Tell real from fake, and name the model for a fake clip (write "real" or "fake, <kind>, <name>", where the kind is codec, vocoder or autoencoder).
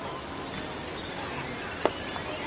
real